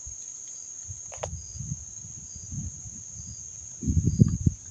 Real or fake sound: real